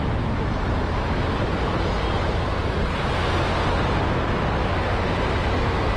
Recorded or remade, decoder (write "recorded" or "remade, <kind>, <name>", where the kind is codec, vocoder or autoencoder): recorded